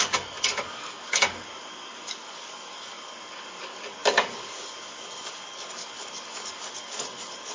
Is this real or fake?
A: fake